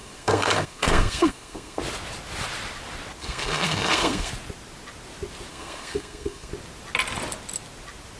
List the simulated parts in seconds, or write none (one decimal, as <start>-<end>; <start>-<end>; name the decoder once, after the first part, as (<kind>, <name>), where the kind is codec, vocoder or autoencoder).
0.0-1.8 (codec, SNAC); 3.2-4.3; 5.5-6.5